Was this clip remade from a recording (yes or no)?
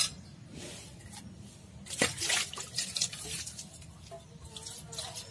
no